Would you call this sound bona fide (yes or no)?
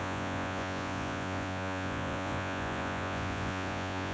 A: no